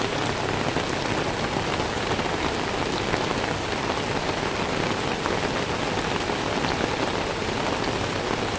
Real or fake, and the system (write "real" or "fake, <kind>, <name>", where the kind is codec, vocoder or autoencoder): real